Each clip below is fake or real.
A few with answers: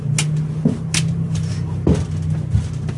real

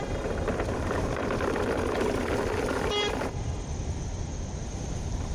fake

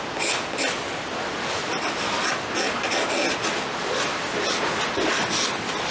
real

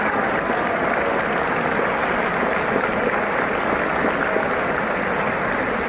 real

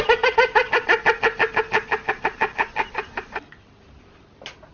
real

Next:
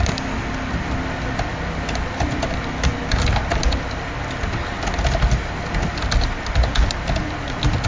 real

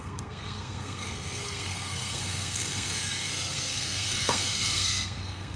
fake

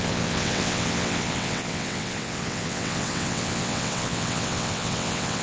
fake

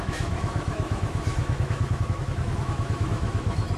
fake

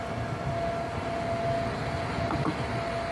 real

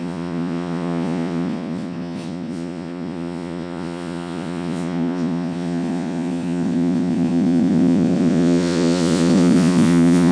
fake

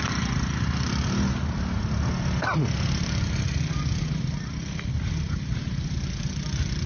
real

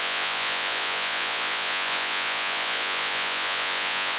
fake